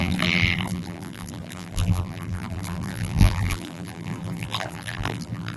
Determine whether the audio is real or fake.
fake